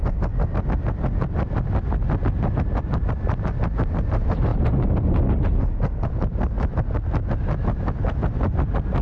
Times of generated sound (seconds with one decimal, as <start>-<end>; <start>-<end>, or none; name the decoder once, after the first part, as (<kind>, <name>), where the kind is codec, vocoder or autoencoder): none